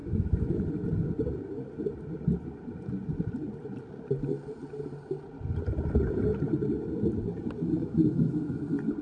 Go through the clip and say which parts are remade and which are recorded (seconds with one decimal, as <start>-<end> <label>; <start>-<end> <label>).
0.0-0.7 remade; 0.7-7.8 recorded; 7.8-8.6 remade; 8.6-9.0 recorded